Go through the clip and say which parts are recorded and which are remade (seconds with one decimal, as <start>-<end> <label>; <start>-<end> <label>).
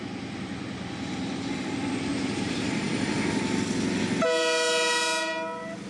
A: 0.0-2.1 recorded; 2.1-3.1 remade; 3.1-5.9 recorded